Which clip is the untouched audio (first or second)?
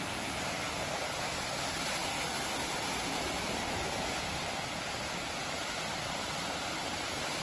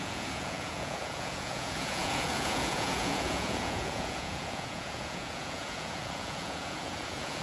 first